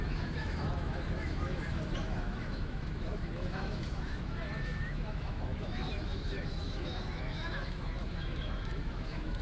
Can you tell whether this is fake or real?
fake